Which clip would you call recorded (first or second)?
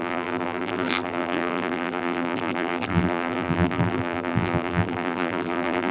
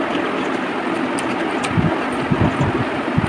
second